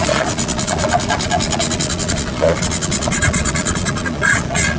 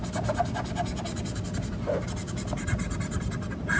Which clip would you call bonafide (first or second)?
second